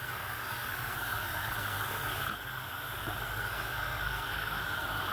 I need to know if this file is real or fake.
fake